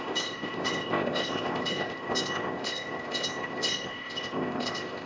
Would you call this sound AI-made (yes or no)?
yes